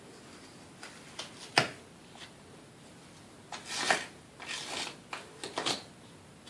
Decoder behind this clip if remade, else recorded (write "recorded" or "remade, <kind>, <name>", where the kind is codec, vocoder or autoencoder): recorded